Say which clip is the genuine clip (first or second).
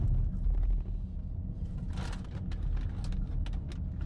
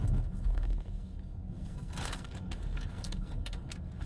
first